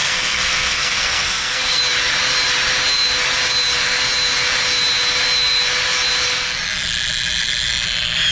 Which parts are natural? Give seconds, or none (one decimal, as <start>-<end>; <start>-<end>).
1.8-8.3